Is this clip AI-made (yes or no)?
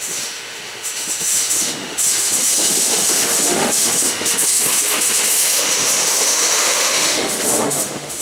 yes